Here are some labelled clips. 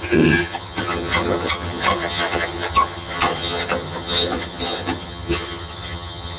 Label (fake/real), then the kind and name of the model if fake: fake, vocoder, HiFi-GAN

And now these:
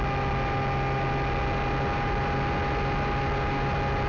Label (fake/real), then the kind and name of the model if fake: real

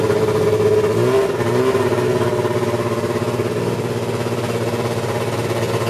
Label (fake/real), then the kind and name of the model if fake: real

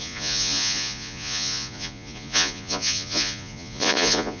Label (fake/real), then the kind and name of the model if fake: fake, vocoder, Vocos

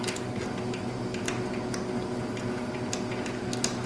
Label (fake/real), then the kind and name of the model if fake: real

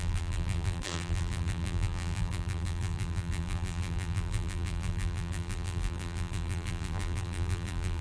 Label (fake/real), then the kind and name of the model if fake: fake, vocoder, BigVGAN v2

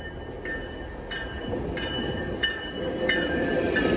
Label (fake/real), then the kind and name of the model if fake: real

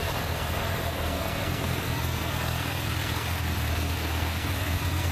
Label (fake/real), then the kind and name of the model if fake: fake, codec, SNAC